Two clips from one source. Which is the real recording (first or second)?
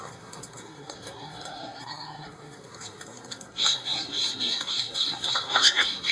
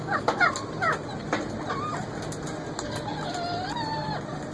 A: second